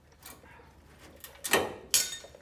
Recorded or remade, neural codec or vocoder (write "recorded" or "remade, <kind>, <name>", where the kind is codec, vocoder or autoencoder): recorded